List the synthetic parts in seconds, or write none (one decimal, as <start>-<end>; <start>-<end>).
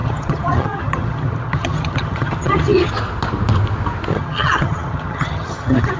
0.0-2.9; 4.1-6.0